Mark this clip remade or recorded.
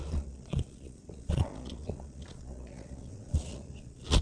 remade